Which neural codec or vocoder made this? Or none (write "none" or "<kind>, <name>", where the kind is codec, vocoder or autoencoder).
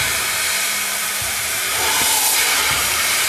vocoder, BigVGAN v2